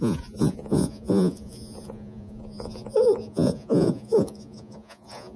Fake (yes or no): yes